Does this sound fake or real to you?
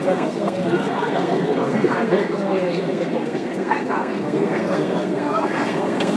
fake